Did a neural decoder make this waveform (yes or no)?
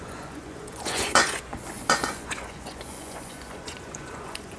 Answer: yes